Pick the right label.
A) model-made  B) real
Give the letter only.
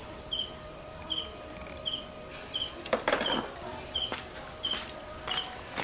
A